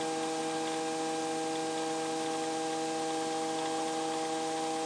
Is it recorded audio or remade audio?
recorded